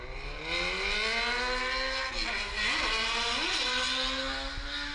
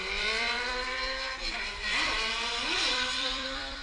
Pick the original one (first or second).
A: first